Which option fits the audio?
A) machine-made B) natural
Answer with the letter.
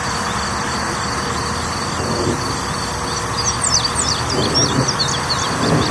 B